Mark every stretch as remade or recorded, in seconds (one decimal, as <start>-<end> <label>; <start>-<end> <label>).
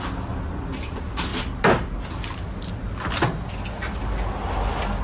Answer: 0.0-5.0 recorded